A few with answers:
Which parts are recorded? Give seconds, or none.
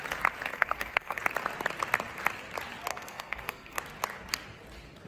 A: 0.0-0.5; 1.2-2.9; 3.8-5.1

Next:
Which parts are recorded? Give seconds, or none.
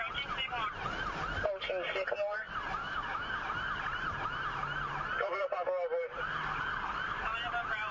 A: 0.0-2.8; 3.4-7.9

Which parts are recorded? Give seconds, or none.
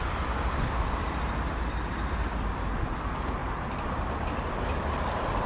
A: 3.4-4.5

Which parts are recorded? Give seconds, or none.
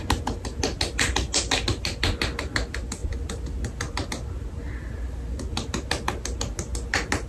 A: 0.0-7.3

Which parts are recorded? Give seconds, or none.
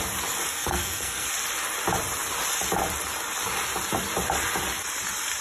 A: 0.0-0.5; 1.3-5.4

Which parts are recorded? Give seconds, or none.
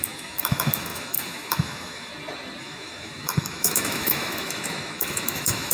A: 2.1-2.6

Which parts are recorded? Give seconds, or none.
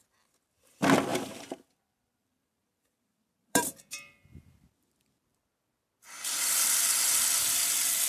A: 0.0-1.1; 1.7-2.2; 3.8-8.1